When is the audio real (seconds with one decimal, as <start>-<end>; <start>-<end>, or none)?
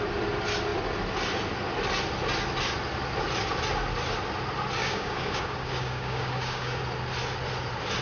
0.0-4.8; 6.8-8.0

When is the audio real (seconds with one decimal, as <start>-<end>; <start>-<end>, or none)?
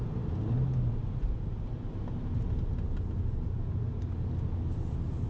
0.0-5.3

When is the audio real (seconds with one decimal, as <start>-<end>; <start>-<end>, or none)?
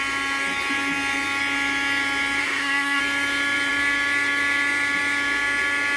0.0-2.4; 3.0-6.0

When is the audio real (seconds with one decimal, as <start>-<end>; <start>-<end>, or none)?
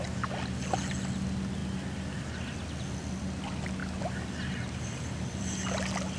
0.0-3.8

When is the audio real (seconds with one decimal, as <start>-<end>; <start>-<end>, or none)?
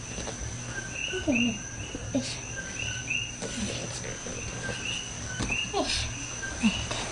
0.0-7.1